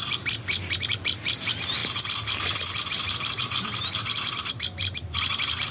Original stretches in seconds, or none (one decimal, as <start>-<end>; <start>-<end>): 0.0-5.7